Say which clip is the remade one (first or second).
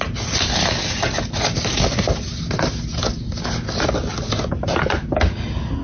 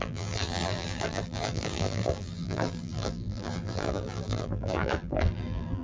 second